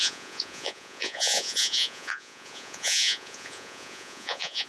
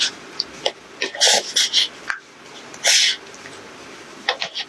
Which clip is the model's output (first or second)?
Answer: first